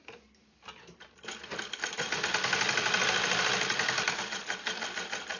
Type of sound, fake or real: real